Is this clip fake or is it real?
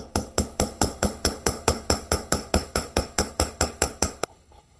fake